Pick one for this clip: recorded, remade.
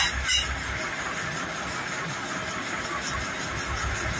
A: recorded